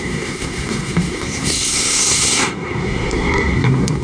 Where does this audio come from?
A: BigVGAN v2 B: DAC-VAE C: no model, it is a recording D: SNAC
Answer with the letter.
D